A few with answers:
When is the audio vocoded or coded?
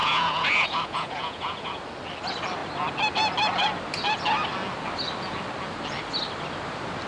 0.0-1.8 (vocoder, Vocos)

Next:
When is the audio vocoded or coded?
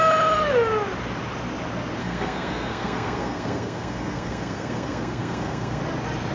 2.0-5.8 (codec, SNAC)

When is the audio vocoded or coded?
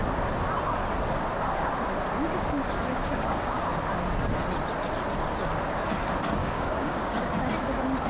2.9-3.6 (codec, DAC); 6.4-7.5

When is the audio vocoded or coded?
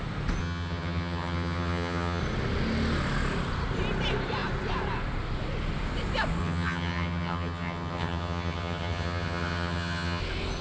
0.4-2.2 (vocoder, HiFi-GAN); 6.4-10.2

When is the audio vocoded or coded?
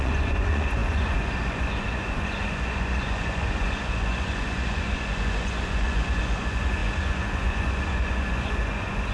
0.0-9.1 (vocoder, Vocos)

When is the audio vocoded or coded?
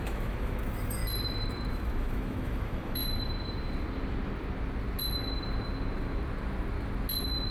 0.0-1.0 (autoencoder, DAC-VAE); 1.7-3.0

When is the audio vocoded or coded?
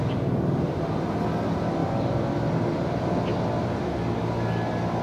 1.8-2.8 (vocoder, BigVGAN v2); 3.3-4.2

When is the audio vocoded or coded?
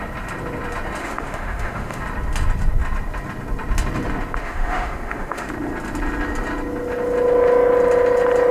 1.0-2.0 (autoencoder, DAC-VAE); 4.4-5.5